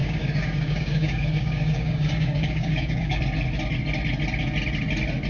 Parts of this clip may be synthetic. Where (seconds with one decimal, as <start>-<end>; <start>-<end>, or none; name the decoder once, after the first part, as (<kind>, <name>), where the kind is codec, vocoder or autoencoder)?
0.0-3.2 (codec, DAC)

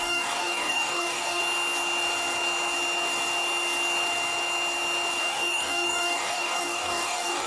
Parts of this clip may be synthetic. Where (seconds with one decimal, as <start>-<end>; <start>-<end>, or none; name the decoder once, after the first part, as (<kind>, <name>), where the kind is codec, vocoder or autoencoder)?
0.0-1.4 (codec, DAC); 5.2-7.5

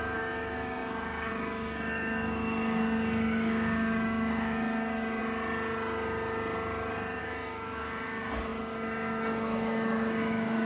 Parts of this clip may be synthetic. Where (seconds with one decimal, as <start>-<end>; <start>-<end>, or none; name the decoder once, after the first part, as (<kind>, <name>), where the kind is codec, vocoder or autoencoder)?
0.0-5.2 (codec, DAC); 7.2-10.7

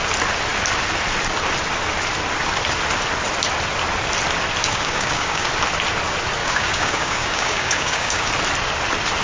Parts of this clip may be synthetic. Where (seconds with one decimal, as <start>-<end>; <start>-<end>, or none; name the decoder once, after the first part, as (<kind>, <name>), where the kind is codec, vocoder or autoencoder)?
4.6-5.5 (codec, DAC); 6.4-8.3

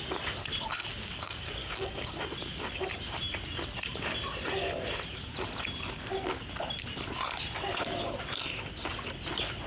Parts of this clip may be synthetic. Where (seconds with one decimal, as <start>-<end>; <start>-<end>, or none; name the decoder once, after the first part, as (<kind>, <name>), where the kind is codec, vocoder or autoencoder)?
0.9-2.2 (codec, DAC)

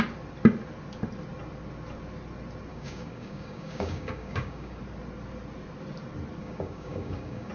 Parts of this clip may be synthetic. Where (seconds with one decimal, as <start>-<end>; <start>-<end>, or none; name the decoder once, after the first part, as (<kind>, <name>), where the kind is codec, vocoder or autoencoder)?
2.7-4.8 (codec, DAC); 6.4-7.5